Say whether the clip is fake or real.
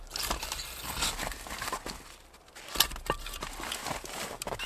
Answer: real